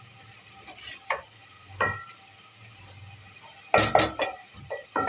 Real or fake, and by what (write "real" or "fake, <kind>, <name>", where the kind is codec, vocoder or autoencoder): real